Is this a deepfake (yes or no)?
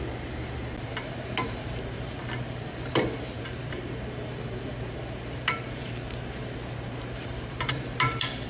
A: yes